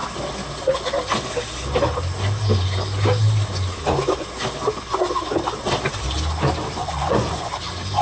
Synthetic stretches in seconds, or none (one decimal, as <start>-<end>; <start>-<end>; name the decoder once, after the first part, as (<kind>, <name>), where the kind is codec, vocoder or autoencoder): 6.8-7.5 (vocoder, Vocos)